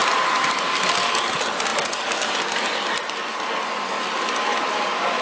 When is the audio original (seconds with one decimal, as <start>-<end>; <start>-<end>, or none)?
0.6-5.2